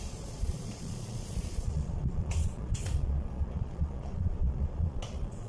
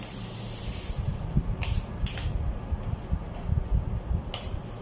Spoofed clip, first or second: first